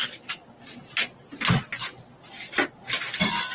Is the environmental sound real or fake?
real